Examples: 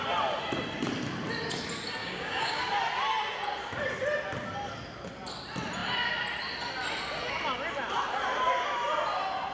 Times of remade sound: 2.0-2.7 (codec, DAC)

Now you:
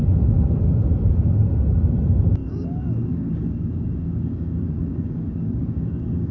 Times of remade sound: 2.4-6.3 (codec, DAC)

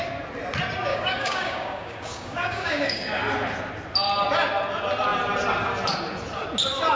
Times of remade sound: 0.9-3.2 (codec, DAC)

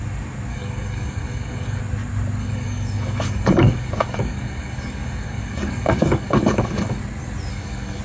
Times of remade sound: 0.5-1.8 (codec, DAC); 2.4-7.0; 7.5-8.0